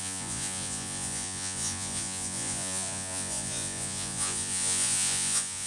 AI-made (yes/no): yes